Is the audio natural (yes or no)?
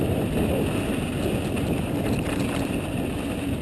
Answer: yes